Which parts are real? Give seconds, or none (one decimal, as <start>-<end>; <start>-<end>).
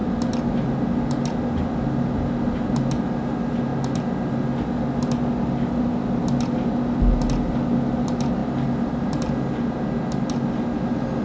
0.0-11.2